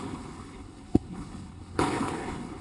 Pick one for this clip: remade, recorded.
remade